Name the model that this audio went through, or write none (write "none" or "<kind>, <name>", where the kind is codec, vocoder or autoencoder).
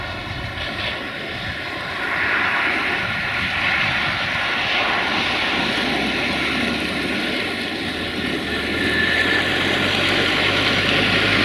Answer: none